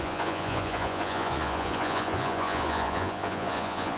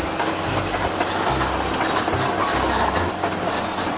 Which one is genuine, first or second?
second